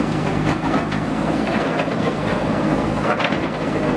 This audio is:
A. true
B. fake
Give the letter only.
B